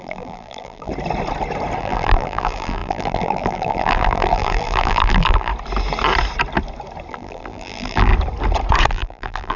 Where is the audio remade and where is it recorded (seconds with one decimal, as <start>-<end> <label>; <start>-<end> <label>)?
0.0-0.9 remade; 0.9-1.8 recorded; 1.8-5.5 remade; 5.5-7.1 recorded; 7.1-8.1 remade; 8.1-8.9 recorded; 8.9-9.6 remade